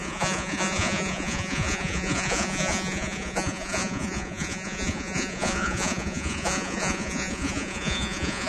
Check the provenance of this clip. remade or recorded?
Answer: remade